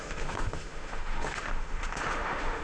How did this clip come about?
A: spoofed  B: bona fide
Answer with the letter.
A